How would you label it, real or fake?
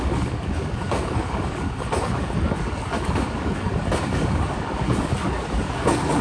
fake